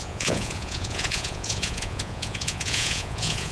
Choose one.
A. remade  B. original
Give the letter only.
A